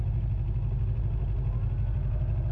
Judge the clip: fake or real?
real